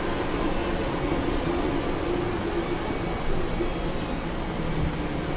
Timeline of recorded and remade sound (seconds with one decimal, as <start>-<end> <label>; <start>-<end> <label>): 0.0-0.6 recorded; 0.6-1.7 remade; 1.7-5.4 recorded